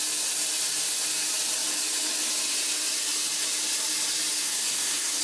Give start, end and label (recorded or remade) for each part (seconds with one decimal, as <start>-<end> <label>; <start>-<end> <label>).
0.0-4.4 recorded; 4.4-5.2 remade

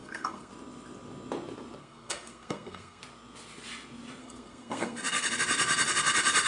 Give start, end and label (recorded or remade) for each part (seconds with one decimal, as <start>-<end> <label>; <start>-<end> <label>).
0.0-0.5 remade; 0.5-1.8 recorded; 1.8-3.0 remade; 3.0-4.2 recorded; 4.2-5.3 remade; 5.3-6.5 recorded

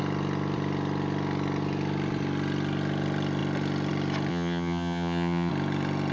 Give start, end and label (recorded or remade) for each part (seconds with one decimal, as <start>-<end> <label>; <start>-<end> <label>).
0.0-4.3 recorded; 4.3-5.5 remade; 5.5-6.1 recorded

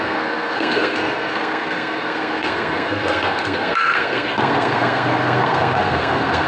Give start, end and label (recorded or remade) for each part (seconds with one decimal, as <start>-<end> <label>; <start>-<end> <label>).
0.0-6.5 remade

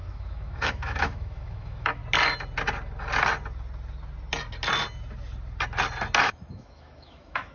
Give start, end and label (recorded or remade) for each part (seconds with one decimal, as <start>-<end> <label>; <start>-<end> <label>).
0.0-2.0 remade; 2.0-6.2 recorded; 6.2-7.5 remade

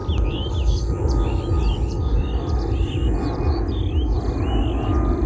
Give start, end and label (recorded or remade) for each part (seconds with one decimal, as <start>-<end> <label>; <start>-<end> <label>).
0.0-5.3 recorded

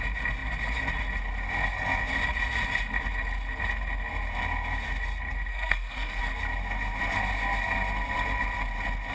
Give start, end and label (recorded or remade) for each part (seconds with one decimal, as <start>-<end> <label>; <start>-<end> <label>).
0.0-5.5 recorded; 5.5-6.2 remade; 6.2-9.1 recorded